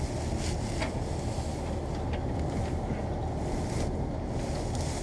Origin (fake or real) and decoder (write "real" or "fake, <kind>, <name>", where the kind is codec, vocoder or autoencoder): real